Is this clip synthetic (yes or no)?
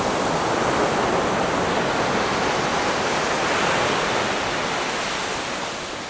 no